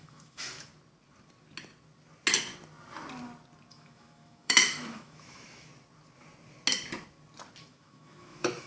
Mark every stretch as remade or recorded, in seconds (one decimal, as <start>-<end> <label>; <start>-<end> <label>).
0.0-0.7 remade; 0.7-3.7 recorded; 3.7-5.7 remade; 5.7-7.6 recorded; 7.6-8.7 remade